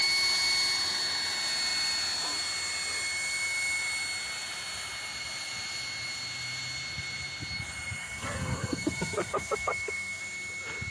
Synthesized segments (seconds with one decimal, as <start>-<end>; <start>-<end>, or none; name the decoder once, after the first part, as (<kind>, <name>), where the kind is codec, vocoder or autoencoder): 8.0-10.2 (codec, SNAC)